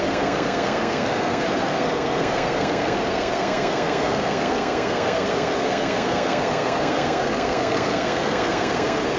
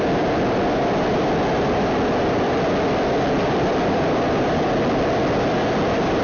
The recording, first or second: second